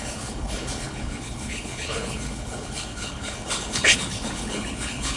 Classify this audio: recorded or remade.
remade